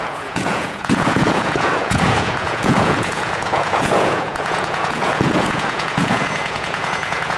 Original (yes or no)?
no